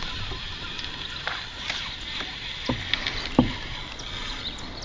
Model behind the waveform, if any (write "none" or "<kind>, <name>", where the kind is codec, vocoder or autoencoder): none